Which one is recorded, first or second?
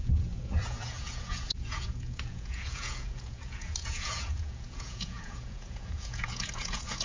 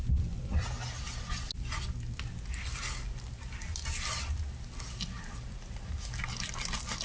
second